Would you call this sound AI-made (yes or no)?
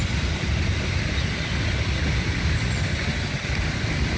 no